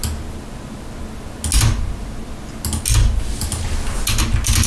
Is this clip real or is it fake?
real